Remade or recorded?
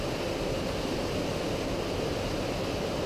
recorded